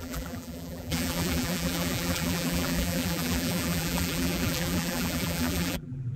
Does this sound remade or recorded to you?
remade